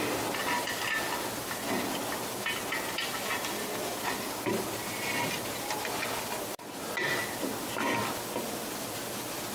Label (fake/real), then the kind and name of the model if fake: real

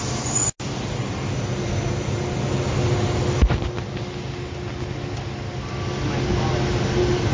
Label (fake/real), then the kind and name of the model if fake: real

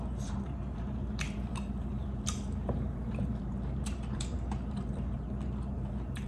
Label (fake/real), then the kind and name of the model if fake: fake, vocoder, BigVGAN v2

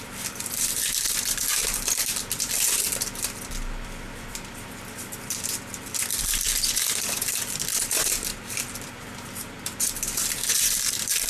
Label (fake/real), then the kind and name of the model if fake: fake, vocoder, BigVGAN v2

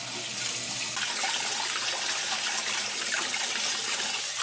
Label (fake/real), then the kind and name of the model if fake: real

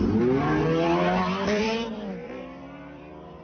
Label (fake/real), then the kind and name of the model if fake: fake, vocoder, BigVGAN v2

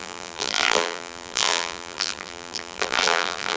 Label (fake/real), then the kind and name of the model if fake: fake, vocoder, BigVGAN v2